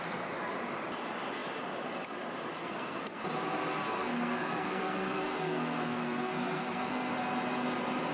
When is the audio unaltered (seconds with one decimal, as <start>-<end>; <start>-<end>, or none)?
0.0-2.6; 3.2-4.0; 7.1-8.1